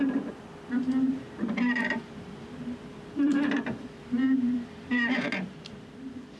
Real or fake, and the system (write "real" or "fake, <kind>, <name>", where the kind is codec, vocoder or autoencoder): fake, vocoder, BigVGAN v2